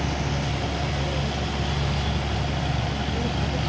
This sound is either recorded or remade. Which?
recorded